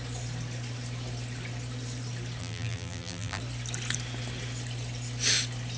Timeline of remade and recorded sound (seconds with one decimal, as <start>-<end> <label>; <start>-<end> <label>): 0.0-2.4 recorded; 2.4-3.4 remade; 3.4-5.8 recorded